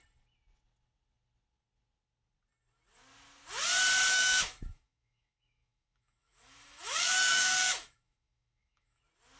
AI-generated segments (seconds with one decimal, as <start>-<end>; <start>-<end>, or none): 4.1-9.0